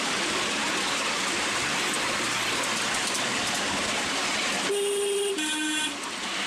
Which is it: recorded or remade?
recorded